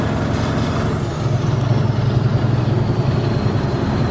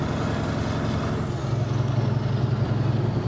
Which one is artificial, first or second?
first